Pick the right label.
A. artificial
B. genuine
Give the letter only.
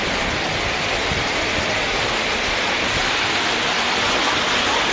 B